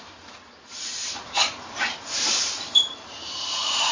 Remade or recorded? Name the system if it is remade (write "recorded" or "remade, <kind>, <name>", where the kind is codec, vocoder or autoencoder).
remade, vocoder, BigVGAN v2